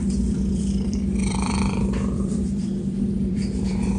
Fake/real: fake